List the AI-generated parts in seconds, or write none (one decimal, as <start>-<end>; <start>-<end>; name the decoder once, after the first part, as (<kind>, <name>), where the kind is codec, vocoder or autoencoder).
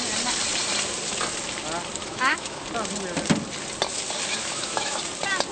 2.0-2.6 (autoencoder, DAC-VAE); 4.4-5.0